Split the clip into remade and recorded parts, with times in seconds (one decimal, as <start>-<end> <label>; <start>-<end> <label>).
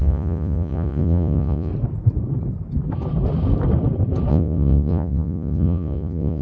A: 0.0-1.7 remade; 1.7-4.3 recorded; 4.3-6.4 remade